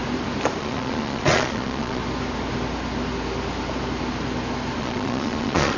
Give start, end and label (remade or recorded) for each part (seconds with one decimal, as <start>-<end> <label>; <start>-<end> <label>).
0.0-0.6 recorded; 0.6-2.0 remade; 2.0-4.8 recorded; 4.8-5.8 remade